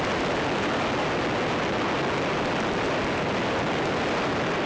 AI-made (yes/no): no